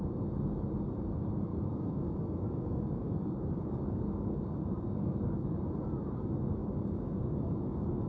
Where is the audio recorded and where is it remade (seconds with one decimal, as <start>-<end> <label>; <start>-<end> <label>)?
0.0-1.5 recorded; 1.5-5.6 remade; 5.6-6.6 recorded; 6.6-8.1 remade